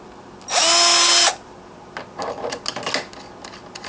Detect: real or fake real